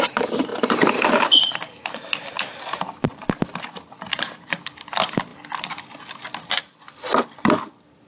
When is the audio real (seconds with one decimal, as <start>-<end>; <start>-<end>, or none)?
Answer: 0.5-1.5; 5.3-6.6